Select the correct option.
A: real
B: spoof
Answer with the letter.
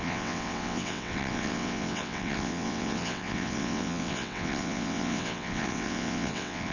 B